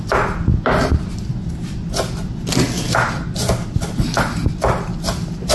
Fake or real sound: real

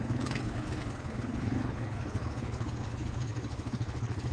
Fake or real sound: fake